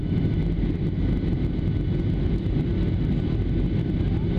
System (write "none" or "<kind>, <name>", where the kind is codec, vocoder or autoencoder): none